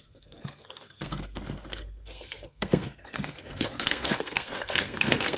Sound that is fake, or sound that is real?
fake